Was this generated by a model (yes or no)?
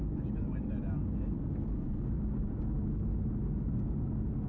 no